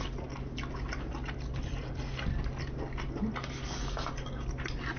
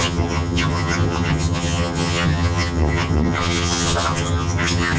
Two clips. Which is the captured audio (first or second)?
first